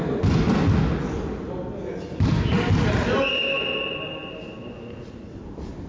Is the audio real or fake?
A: real